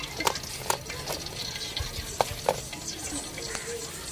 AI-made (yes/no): no